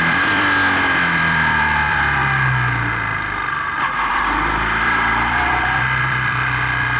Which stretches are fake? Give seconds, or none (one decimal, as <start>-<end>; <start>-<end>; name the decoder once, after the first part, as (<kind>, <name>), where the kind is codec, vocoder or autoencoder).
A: 0.0-2.2 (vocoder, BigVGAN v2); 4.1-7.0